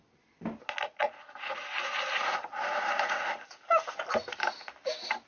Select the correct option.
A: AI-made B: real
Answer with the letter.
B